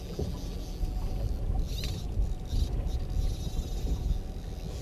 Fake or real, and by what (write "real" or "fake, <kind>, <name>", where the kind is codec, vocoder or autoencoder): real